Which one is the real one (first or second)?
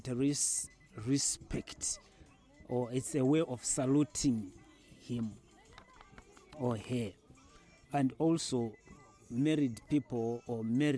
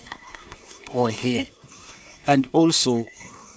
first